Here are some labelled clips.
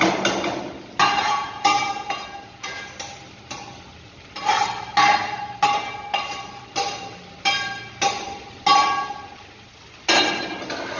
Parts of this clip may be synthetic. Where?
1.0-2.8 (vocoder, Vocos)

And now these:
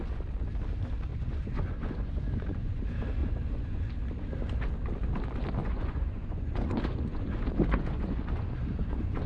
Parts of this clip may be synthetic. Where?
1.1-2.8 (vocoder, Vocos); 3.2-3.9; 5.6-9.3

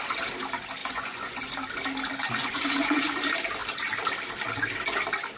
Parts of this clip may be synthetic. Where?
0.8-1.5 (vocoder, Vocos); 2.4-3.2

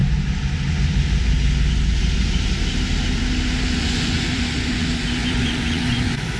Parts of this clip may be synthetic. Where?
3.8-6.4 (vocoder, Vocos)

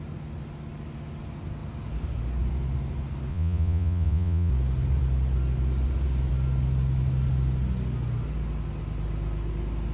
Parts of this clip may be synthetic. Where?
3.3-4.5 (vocoder, Vocos)

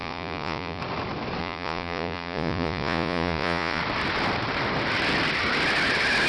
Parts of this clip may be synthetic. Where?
0.0-0.8 (vocoder, Vocos); 1.4-3.8